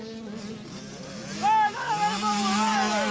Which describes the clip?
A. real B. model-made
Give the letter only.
A